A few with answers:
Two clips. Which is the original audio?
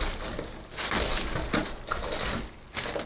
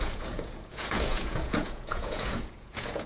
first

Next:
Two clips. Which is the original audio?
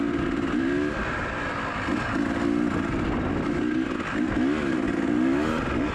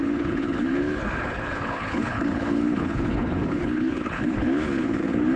first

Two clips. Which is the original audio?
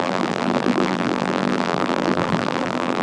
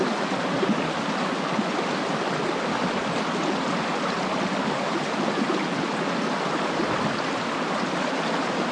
second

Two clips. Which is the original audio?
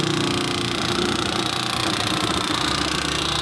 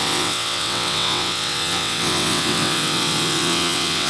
first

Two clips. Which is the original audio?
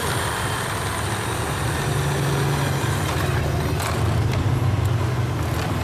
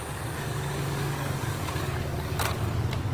first